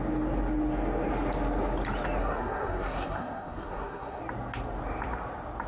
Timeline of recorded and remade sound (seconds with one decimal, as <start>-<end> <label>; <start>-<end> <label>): 0.0-2.2 recorded; 2.2-4.2 remade; 4.2-5.7 recorded